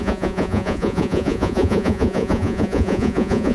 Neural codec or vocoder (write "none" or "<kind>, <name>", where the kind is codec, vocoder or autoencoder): vocoder, Vocos